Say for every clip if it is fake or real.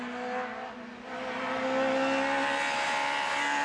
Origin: real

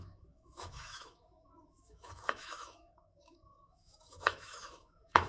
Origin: fake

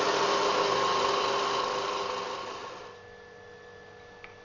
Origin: real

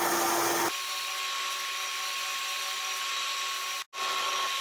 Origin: real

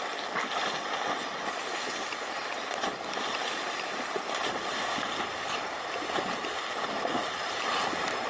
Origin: real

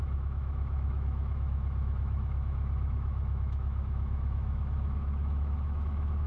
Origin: fake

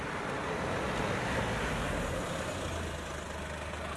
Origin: real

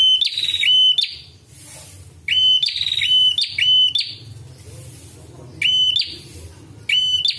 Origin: real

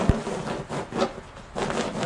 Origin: real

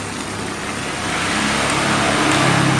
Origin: real